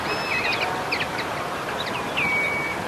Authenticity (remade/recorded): recorded